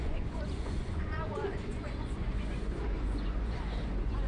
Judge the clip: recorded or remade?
remade